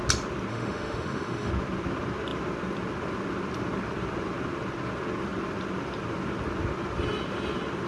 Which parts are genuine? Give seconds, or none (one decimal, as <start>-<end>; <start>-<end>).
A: 0.0-0.5; 1.5-7.9